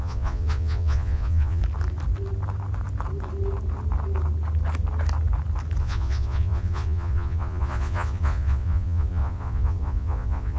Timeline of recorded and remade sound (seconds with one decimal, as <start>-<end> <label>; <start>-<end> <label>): 0.0-1.6 remade; 1.6-5.8 recorded; 5.8-10.6 remade